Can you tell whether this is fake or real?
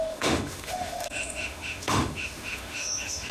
fake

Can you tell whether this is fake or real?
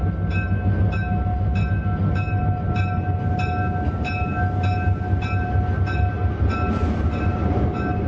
real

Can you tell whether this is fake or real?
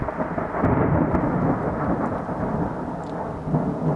real